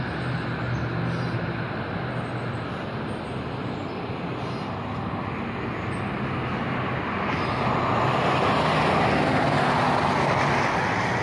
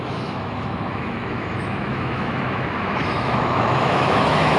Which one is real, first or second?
first